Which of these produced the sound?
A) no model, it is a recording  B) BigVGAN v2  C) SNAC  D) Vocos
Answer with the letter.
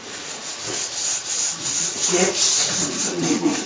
D